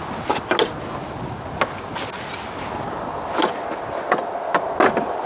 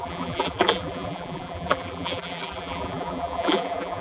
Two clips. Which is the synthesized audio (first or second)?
second